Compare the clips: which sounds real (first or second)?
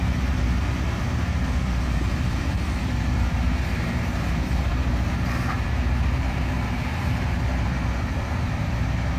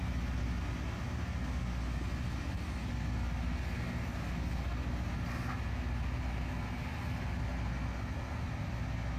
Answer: second